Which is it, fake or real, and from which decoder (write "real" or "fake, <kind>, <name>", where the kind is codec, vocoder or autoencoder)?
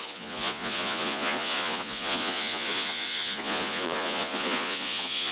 fake, vocoder, Vocos